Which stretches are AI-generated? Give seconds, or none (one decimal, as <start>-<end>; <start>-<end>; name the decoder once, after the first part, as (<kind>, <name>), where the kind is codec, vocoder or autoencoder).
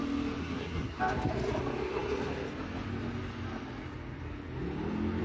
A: 0.4-1.0 (codec, SNAC)